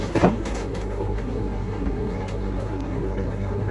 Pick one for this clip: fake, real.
fake